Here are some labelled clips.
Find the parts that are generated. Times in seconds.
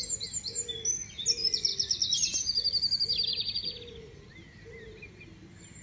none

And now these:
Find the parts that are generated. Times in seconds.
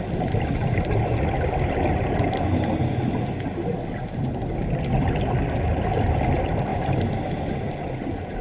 none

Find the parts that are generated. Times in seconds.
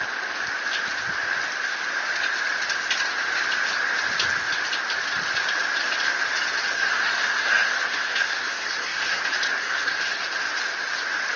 6.7-9.2 (codec, SNAC); 9.6-10.2